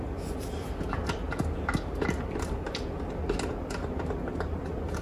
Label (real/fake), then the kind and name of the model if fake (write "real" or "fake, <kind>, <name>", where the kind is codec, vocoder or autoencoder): real